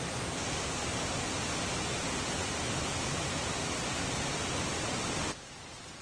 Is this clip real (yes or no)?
yes